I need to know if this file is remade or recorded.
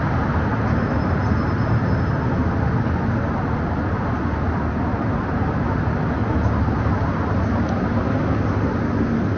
recorded